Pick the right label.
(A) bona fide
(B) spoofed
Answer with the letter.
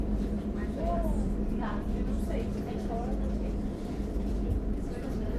B